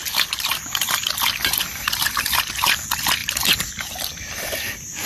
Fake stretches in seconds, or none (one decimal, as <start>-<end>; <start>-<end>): 0.0-2.5; 3.2-5.1